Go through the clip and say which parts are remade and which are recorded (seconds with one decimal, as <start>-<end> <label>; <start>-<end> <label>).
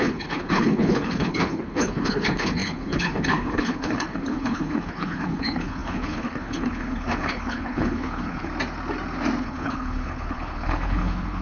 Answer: 0.0-8.5 remade; 8.5-9.4 recorded; 9.4-11.4 remade